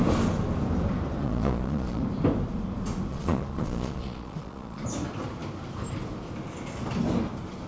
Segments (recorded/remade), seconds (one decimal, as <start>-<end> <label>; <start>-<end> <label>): 0.0-1.2 recorded; 1.2-2.0 remade; 2.0-3.1 recorded; 3.1-4.8 remade; 4.8-7.7 recorded